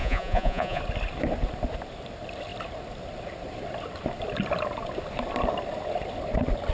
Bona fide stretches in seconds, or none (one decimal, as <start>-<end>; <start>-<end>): 0.8-6.7